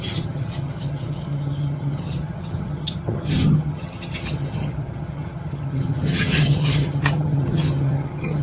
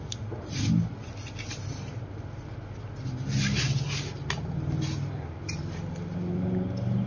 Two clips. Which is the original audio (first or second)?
second